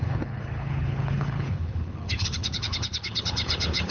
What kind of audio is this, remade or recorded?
remade